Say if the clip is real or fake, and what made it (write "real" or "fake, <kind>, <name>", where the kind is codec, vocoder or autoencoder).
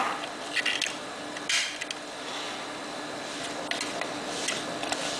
real